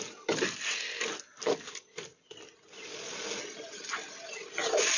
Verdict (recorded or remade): recorded